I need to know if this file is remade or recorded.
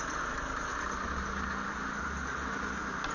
recorded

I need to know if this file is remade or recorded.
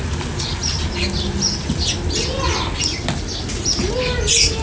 recorded